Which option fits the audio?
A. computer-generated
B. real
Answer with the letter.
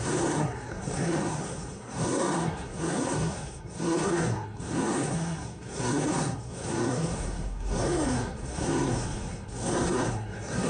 A